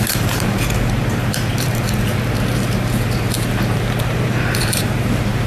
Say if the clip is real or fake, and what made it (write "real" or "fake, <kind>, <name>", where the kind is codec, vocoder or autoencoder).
fake, vocoder, BigVGAN v2